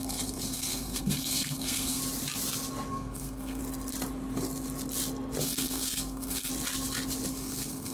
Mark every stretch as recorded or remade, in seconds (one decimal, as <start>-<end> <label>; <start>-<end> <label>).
0.0-2.0 remade; 2.0-2.9 recorded; 2.9-3.6 remade; 3.6-5.4 recorded; 5.4-6.5 remade; 6.5-7.3 recorded; 7.3-7.9 remade